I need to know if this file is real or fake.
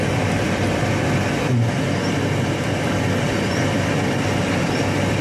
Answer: fake